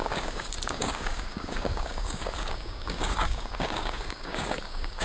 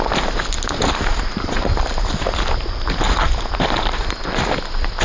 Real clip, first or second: second